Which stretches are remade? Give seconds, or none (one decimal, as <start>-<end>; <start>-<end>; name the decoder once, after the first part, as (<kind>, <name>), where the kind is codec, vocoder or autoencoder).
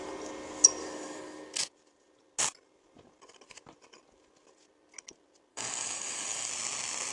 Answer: 0.8-1.6 (codec, DAC); 5.5-6.5